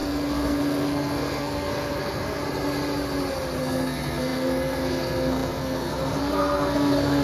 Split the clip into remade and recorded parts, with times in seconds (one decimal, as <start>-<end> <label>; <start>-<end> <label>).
0.0-2.4 remade; 2.4-3.6 recorded; 3.6-7.2 remade